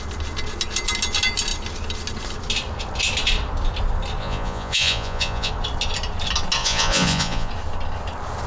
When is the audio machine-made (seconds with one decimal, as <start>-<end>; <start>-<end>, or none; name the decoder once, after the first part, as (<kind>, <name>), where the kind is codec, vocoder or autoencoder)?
4.2-5.5 (vocoder, Vocos); 6.6-7.5